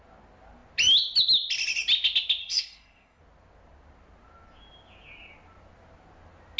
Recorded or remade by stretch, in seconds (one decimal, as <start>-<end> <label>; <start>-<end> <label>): 0.0-2.4 recorded; 2.4-3.2 remade; 3.2-6.6 recorded